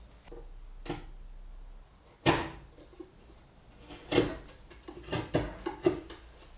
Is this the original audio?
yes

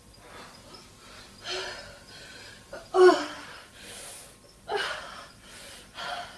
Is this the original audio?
yes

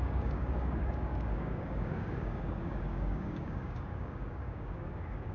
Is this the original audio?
no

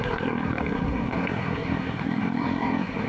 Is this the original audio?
no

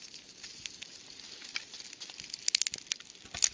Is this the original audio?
yes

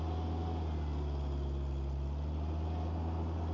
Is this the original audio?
yes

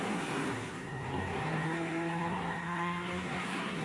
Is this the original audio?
no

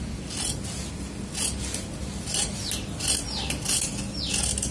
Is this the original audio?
yes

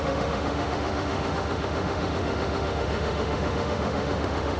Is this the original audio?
no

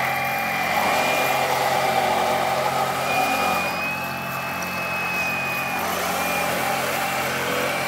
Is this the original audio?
yes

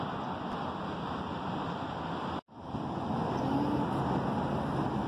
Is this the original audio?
yes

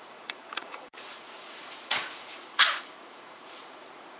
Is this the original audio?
no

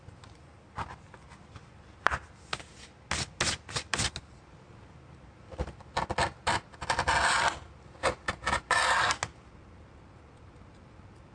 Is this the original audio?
yes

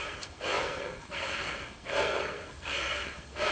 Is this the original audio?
no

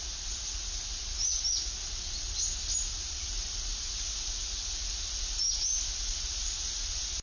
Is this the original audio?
yes